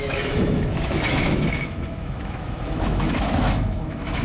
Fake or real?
fake